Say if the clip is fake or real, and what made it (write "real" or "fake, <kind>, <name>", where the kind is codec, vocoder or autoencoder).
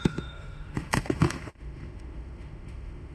fake, autoencoder, DAC-VAE